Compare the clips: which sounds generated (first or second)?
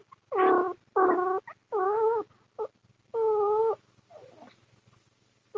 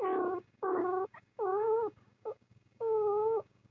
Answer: second